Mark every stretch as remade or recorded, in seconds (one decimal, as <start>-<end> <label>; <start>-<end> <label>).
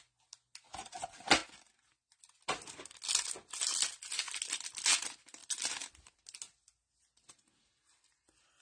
0.0-8.6 recorded